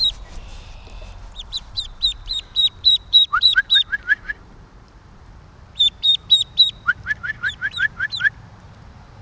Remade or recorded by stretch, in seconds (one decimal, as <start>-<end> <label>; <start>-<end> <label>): 0.0-0.5 recorded; 0.5-5.3 remade; 5.3-9.2 recorded